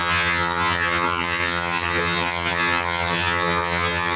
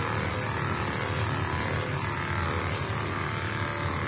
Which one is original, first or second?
second